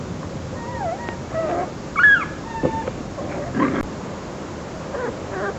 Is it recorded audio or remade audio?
recorded